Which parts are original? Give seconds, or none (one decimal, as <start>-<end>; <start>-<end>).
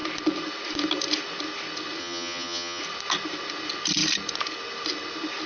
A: 0.0-2.0; 2.8-5.5